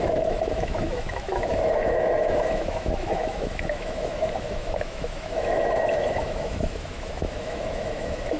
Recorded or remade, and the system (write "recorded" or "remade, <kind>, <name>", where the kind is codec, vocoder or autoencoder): remade, autoencoder, DAC-VAE